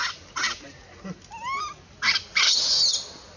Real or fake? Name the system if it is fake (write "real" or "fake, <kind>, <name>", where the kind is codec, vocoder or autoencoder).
real